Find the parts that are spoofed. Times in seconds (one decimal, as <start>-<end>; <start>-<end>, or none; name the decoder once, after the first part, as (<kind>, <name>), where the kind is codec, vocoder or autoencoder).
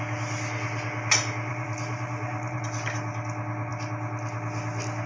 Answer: 1.5-2.6 (vocoder, BigVGAN v2)